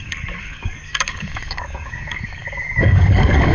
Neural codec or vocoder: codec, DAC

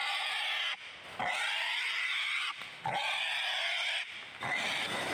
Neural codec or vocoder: vocoder, BigVGAN v2